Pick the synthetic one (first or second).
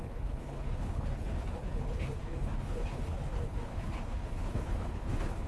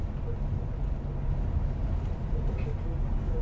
first